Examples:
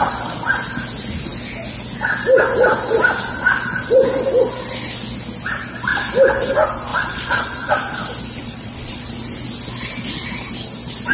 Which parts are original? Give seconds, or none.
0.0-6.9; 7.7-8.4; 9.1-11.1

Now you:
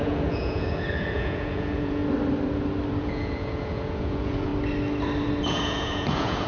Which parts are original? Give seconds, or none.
2.0-3.0; 4.5-5.4